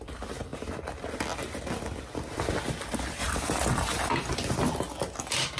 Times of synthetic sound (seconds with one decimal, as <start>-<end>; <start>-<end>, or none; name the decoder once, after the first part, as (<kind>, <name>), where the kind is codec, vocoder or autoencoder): 3.2-4.1 (vocoder, BigVGAN v2)